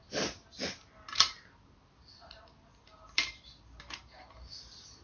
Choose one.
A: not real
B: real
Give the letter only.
B